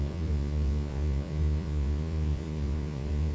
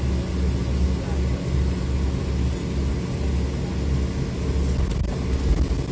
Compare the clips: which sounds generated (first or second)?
first